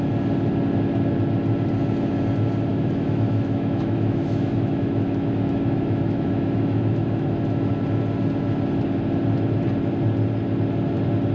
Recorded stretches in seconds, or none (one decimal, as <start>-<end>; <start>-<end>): 0.0-2.7; 7.7-11.3